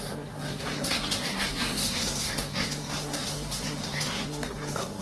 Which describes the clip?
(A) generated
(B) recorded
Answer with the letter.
A